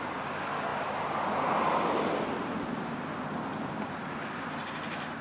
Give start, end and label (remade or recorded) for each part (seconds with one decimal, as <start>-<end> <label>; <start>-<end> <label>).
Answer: 0.0-5.2 recorded